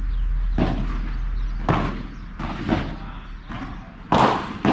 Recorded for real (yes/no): yes